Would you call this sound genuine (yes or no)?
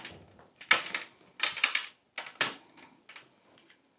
yes